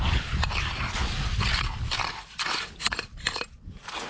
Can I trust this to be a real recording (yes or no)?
yes